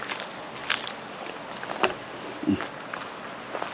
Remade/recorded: recorded